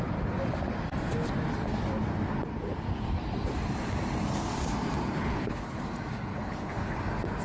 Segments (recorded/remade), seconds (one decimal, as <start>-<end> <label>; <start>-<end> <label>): 0.0-5.1 recorded; 5.1-5.8 remade; 5.8-6.3 recorded; 6.3-7.0 remade; 7.0-7.4 recorded